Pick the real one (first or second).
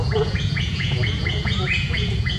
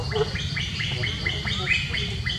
second